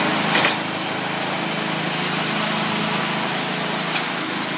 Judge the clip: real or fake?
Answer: real